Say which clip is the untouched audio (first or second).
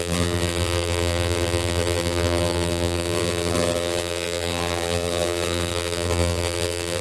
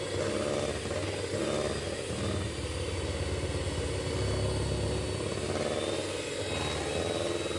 second